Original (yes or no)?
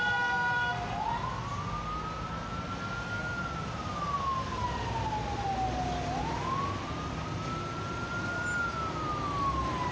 yes